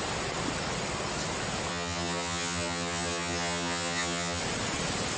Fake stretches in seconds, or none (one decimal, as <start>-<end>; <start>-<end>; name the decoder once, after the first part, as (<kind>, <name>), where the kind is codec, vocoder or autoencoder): 1.7-4.4 (vocoder, HiFi-GAN)

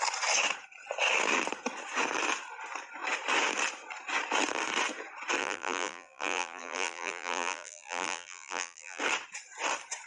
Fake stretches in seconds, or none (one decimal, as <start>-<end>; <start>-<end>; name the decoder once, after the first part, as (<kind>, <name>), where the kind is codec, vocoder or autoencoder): 5.4-9.0 (vocoder, BigVGAN v2)

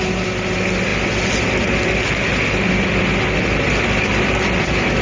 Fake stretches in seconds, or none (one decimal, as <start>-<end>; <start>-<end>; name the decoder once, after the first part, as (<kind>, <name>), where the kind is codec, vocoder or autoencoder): none

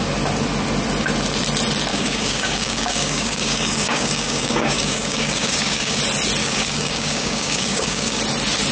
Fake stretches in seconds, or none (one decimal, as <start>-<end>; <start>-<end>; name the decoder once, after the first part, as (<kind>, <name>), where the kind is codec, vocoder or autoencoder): 1.9-6.0 (codec, DAC); 6.4-8.2

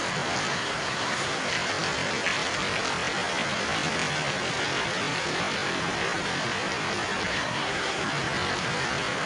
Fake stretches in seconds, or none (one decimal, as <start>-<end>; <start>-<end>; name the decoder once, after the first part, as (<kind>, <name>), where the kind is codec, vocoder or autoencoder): 0.5-1.4 (codec, SNAC); 7.3-8.0